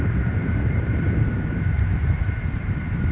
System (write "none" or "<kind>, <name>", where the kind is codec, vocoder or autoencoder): vocoder, BigVGAN v2